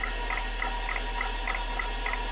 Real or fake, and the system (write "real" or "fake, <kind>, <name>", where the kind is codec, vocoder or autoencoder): real